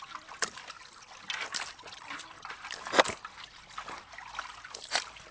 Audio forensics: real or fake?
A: real